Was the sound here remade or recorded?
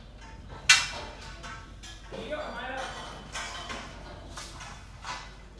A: recorded